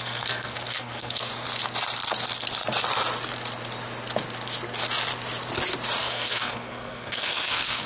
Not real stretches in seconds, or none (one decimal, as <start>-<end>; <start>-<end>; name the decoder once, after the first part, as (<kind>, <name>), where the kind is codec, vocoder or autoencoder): 0.0-1.3 (codec, SNAC); 6.0-7.9